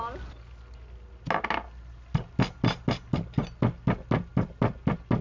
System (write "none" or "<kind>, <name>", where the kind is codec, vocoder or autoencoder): none